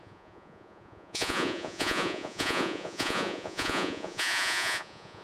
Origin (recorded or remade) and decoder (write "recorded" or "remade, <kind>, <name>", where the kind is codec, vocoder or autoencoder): remade, vocoder, Vocos